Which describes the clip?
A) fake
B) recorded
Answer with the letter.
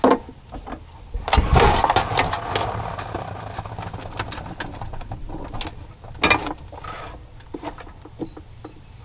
B